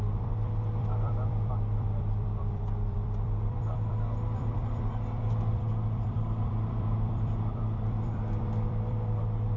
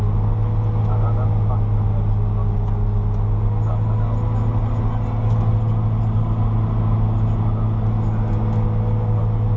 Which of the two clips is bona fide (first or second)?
second